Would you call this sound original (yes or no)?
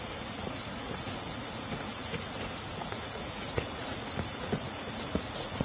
no